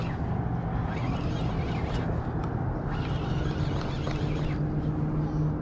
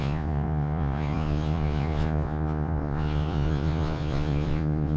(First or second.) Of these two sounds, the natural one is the first